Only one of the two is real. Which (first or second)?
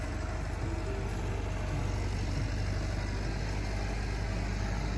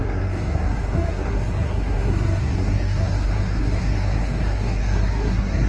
first